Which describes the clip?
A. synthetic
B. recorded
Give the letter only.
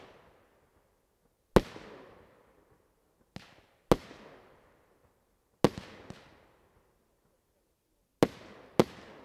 B